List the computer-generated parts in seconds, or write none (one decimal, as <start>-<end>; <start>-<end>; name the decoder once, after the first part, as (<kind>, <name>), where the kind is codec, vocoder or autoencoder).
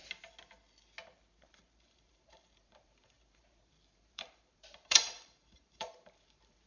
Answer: 1.4-6.7 (vocoder, BigVGAN v2)